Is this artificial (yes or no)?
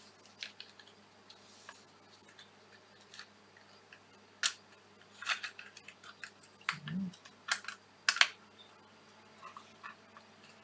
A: no